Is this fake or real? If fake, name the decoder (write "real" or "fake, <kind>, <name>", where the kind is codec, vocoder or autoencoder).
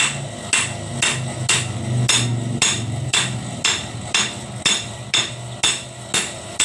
real